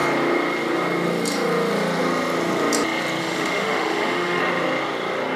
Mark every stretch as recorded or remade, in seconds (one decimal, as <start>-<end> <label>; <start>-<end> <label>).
0.0-3.2 recorded; 3.2-4.4 remade; 4.4-5.4 recorded

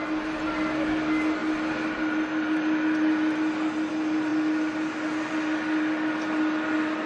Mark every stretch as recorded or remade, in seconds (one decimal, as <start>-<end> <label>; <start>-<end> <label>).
0.0-7.1 recorded

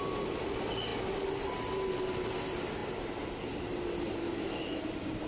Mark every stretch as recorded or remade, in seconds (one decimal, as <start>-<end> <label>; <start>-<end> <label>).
0.0-4.2 recorded; 4.2-4.8 remade; 4.8-5.3 recorded

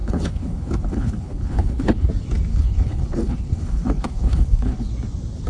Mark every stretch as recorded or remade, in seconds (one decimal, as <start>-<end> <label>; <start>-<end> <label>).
0.0-2.1 remade; 2.1-2.5 recorded; 2.5-4.9 remade; 4.9-5.5 recorded

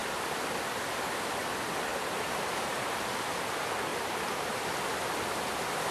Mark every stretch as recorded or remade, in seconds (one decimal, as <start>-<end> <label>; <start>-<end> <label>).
0.0-1.9 recorded; 1.9-3.3 remade; 3.3-3.9 recorded; 3.9-4.7 remade; 4.7-5.9 recorded